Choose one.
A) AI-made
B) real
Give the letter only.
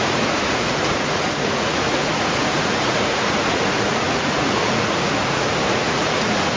A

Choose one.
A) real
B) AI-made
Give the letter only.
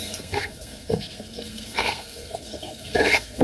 B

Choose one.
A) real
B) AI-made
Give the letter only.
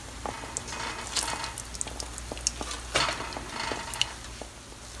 A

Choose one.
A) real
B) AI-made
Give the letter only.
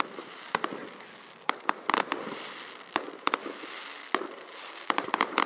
A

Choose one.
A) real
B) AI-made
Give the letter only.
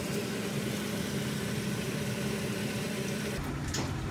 B